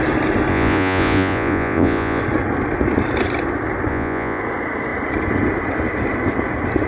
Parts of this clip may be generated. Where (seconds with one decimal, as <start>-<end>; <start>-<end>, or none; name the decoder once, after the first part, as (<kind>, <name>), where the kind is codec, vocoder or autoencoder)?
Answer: 0.5-2.2 (vocoder, Vocos); 3.9-4.4